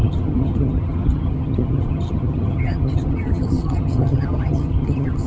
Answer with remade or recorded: remade